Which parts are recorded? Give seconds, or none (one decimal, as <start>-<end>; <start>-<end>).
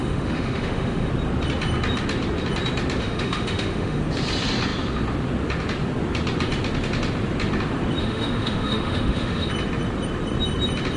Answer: 1.1-3.0; 4.0-8.0; 9.5-11.0